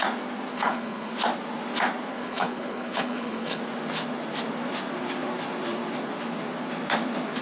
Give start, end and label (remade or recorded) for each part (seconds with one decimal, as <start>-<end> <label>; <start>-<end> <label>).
0.0-0.5 recorded; 0.5-1.1 remade; 1.1-2.1 recorded; 2.1-3.6 remade; 3.6-7.4 recorded